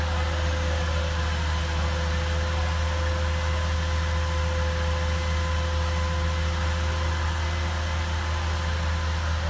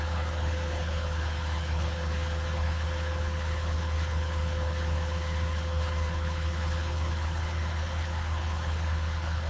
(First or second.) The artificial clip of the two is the second